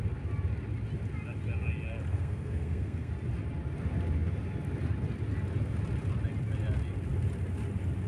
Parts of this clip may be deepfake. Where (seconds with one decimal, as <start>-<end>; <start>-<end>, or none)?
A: 2.1-3.1